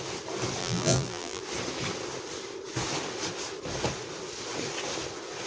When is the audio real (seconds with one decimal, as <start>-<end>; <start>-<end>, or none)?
0.0-0.6; 1.4-5.5